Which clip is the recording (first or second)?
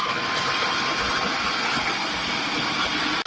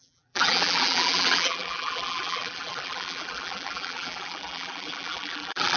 first